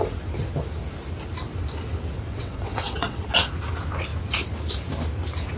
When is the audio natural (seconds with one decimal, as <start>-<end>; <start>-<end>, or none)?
0.0-2.3; 3.3-5.6

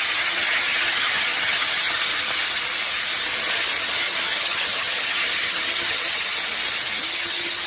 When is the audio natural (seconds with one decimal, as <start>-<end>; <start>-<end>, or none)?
2.1-3.5; 6.3-7.0

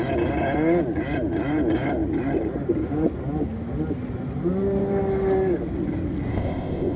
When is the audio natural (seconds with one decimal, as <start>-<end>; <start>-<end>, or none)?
0.0-6.3

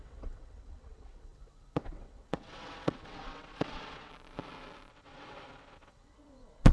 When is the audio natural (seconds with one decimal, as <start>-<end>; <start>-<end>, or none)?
4.1-4.9

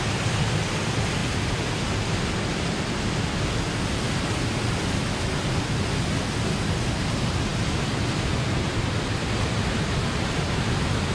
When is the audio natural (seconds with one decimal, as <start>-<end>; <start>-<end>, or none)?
0.0-11.1